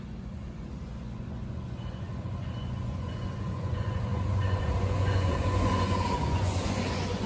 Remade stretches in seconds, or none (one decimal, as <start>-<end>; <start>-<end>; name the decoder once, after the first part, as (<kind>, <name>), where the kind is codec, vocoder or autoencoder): 0.0-7.3 (vocoder, Vocos)